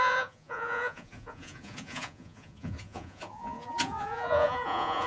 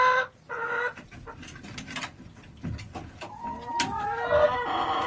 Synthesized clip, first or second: first